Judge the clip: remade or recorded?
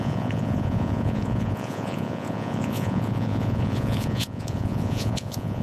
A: remade